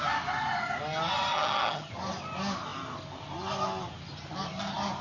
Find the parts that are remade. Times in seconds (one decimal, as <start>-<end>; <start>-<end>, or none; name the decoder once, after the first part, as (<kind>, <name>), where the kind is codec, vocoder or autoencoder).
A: 1.3-1.9 (vocoder, HiFi-GAN)